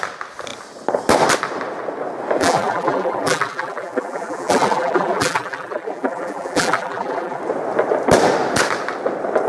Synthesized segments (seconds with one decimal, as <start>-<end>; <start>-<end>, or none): 2.4-7.4